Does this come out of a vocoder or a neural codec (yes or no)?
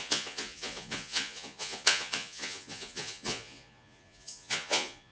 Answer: yes